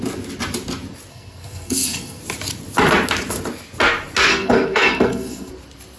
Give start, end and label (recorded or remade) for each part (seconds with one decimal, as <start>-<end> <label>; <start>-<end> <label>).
0.0-1.1 recorded; 1.1-2.2 remade; 2.2-4.3 recorded; 4.3-5.5 remade; 5.5-6.0 recorded